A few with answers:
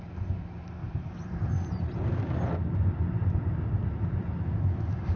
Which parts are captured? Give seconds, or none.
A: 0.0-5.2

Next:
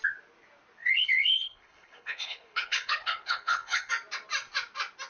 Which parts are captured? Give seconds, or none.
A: 0.0-0.8; 3.9-5.1